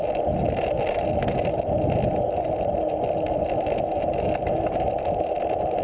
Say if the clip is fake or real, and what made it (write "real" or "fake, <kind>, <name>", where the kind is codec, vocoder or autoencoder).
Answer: real